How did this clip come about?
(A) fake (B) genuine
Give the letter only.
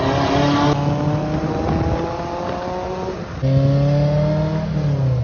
B